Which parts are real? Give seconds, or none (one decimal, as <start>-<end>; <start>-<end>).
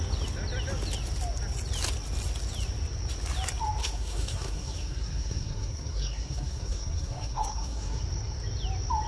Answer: 0.0-3.8; 8.0-9.1